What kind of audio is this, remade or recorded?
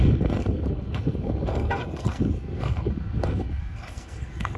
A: remade